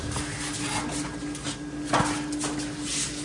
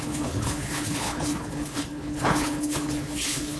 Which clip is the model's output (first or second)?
second